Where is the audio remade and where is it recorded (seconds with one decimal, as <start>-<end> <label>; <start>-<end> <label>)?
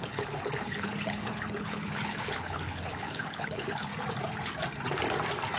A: 0.0-3.9 remade; 3.9-5.6 recorded